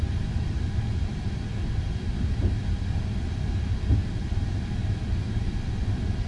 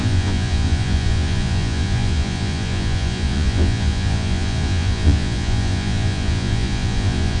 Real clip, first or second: first